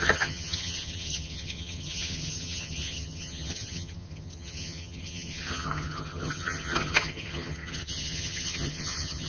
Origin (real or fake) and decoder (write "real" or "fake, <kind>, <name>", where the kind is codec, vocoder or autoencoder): fake, vocoder, HiFi-GAN